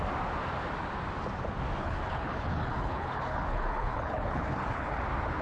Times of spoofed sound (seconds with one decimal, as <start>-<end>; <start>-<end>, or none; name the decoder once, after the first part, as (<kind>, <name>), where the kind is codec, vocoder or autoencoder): 1.8-5.0 (codec, HILCodec)

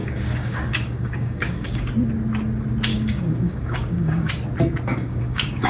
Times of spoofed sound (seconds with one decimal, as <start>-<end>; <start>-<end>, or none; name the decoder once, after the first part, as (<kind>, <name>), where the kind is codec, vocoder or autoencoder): 0.0-1.9 (codec, DAC); 2.9-4.3; 4.9-5.7

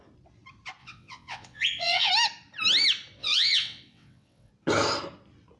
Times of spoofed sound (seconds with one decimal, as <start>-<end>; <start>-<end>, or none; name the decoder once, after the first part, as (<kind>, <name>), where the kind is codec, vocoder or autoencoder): 0.8-2.1 (vocoder, WaveNeXt); 3.2-4.5

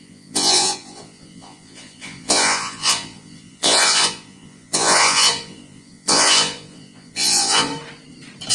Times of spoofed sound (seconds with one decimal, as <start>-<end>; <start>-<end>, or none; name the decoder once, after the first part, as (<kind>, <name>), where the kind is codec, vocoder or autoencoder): 0.0-7.7 (vocoder, Vocos)

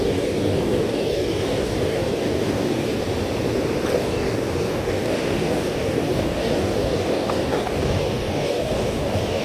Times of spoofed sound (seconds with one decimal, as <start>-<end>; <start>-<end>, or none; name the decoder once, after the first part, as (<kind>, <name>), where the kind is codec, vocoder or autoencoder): 0.0-3.0 (codec, DAC); 4.0-9.4

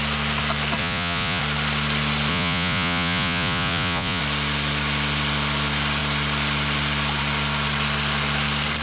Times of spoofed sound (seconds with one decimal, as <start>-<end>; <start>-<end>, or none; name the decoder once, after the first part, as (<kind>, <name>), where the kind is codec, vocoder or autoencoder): 0.8-1.4 (vocoder, Vocos); 2.3-4.2